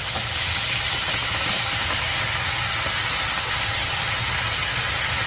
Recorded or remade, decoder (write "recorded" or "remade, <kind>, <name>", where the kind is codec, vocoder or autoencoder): recorded